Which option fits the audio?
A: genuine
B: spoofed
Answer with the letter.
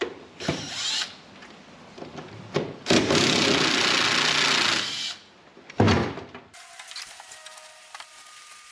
A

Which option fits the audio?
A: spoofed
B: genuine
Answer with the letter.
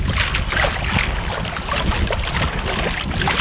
B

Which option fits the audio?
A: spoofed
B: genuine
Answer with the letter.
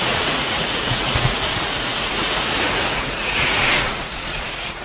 A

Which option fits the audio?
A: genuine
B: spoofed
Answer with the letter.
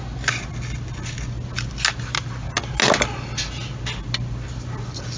A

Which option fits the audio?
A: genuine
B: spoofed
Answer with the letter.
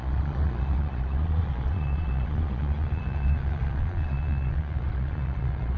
B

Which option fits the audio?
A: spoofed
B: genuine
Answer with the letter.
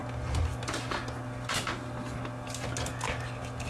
B